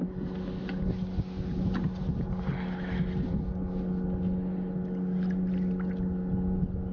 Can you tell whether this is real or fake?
real